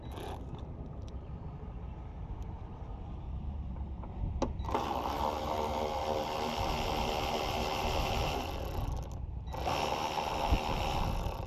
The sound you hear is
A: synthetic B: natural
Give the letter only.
B